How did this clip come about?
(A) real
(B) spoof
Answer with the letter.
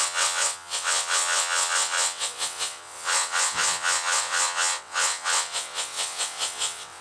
B